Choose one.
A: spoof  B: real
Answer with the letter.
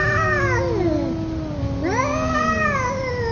A